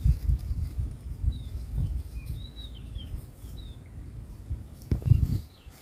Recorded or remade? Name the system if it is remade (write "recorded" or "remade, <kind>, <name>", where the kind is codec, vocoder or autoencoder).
remade, codec, DAC